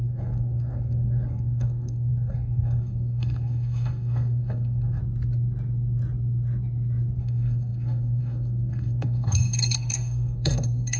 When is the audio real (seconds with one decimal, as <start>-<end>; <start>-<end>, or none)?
5.0-7.2